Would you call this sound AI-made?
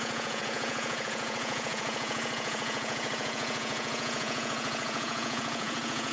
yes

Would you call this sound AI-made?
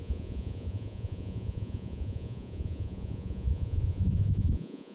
yes